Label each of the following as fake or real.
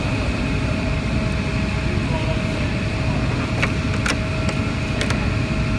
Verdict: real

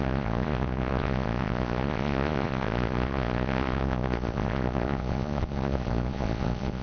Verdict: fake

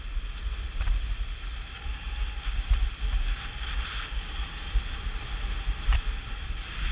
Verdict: real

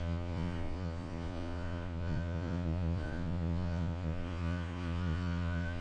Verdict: fake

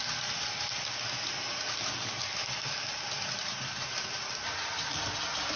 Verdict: real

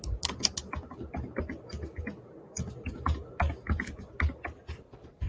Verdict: real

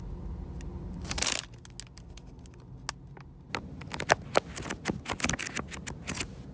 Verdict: real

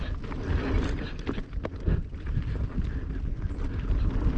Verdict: real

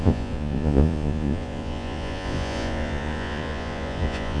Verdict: fake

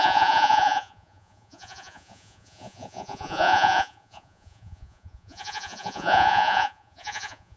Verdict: fake